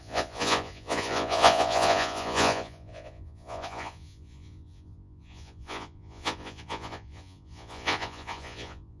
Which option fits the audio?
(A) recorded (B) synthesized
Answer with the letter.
B